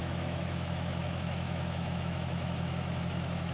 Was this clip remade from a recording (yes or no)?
yes